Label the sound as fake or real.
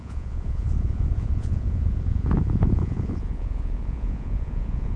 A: fake